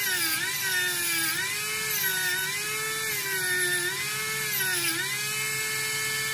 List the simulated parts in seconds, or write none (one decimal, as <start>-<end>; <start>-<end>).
none